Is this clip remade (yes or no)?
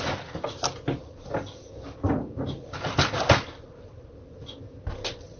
no